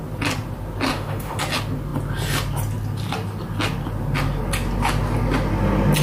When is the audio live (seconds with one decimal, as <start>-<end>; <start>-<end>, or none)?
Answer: 0.0-0.9; 1.4-6.0